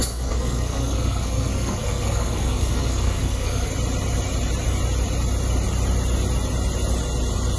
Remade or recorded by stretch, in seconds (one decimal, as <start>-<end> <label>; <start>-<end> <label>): 0.0-3.7 remade; 3.7-7.6 recorded